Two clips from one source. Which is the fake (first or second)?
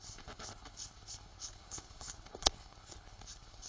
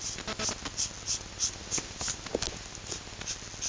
first